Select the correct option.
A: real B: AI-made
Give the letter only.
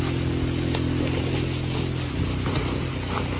A